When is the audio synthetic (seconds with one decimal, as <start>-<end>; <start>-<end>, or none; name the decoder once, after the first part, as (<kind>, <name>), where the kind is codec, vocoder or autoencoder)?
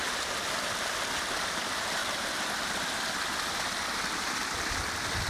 none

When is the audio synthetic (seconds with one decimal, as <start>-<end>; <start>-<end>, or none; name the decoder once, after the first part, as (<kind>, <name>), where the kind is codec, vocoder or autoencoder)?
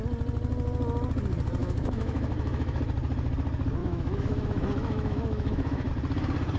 1.6-2.8 (autoencoder, DAC-VAE); 3.8-5.9